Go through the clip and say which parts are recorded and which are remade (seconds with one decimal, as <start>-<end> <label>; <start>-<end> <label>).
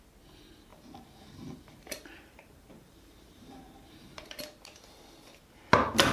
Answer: 0.0-0.7 recorded; 0.7-4.4 remade; 4.4-6.1 recorded